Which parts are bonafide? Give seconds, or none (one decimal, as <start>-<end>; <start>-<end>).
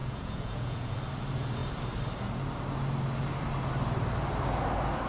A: 0.9-5.1